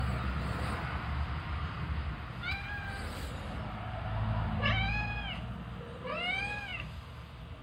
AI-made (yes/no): no